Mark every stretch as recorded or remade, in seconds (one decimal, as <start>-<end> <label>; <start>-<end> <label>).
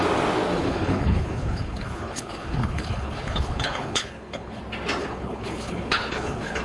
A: 0.0-0.6 recorded; 0.6-4.6 remade; 4.6-5.0 recorded; 5.0-6.6 remade